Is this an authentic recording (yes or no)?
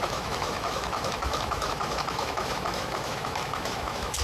no